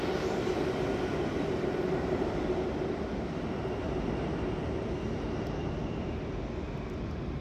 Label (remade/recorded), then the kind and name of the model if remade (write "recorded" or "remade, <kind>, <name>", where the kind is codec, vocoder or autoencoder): recorded